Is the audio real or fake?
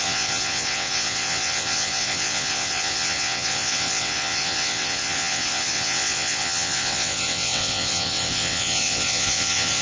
fake